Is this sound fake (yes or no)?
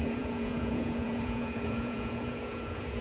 yes